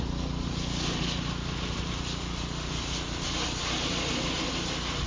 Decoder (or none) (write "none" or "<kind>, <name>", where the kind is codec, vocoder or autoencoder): none